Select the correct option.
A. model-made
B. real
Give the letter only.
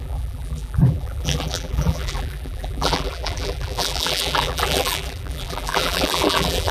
A